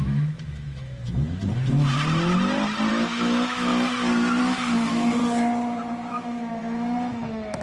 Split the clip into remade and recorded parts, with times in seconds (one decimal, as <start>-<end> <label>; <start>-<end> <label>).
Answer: 0.0-1.0 remade; 1.0-2.9 recorded; 2.9-3.7 remade; 3.7-4.4 recorded; 4.4-5.2 remade; 5.2-6.1 recorded; 6.1-7.6 remade